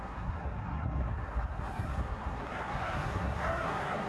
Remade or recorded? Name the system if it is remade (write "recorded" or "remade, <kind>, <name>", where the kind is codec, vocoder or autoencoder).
remade, codec, SNAC